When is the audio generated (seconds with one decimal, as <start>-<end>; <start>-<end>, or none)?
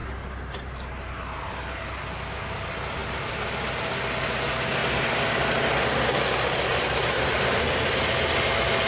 0.0-1.5